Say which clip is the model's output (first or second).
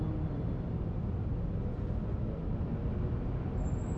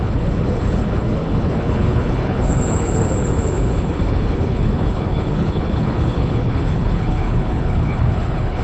second